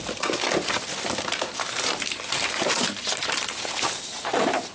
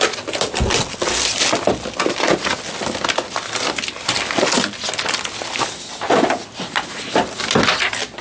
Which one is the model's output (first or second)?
first